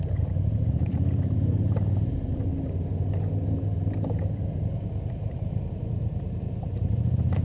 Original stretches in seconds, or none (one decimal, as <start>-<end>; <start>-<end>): 2.5-4.1